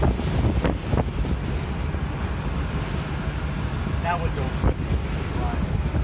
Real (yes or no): no